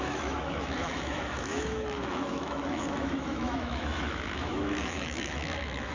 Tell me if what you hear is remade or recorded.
remade